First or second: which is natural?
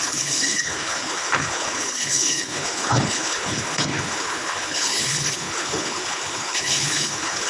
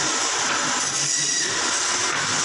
second